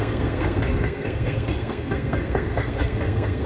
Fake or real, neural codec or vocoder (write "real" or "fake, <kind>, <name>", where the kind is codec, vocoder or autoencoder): fake, codec, SNAC